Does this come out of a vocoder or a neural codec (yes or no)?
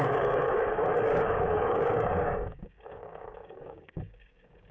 yes